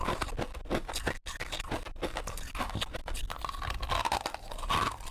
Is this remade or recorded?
recorded